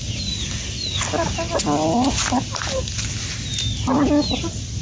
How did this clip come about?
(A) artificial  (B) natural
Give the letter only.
B